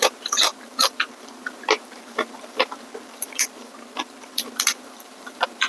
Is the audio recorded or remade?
remade